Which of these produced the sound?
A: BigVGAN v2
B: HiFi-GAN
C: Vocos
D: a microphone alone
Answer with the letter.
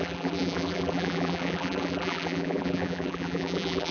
A